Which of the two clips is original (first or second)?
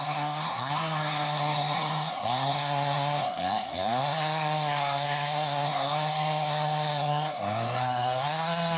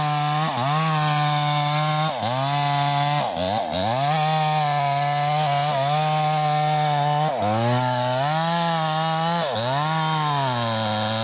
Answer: second